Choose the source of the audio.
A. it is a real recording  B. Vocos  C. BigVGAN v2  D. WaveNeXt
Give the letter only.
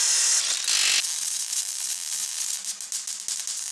A